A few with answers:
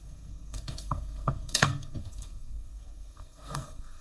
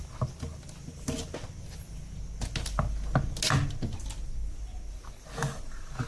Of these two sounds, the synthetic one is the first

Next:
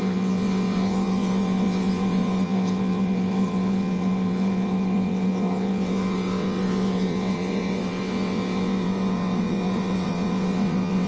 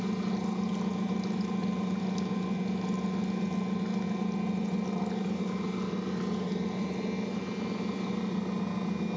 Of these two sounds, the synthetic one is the first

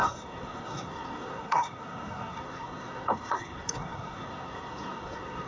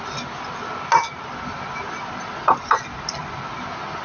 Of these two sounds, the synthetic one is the first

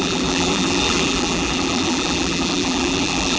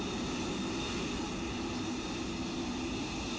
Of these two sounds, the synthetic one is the first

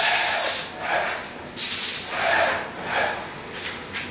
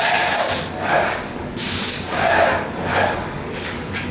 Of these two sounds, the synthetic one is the second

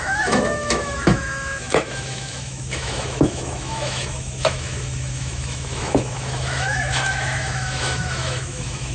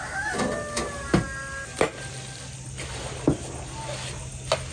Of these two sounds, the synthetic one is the first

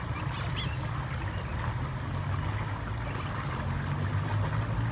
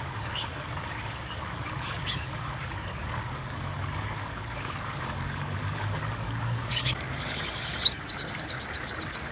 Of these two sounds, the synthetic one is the second